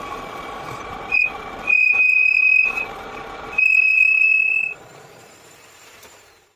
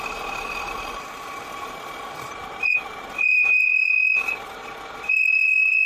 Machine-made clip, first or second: first